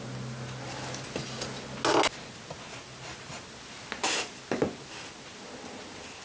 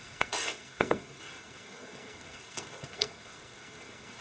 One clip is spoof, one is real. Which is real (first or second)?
first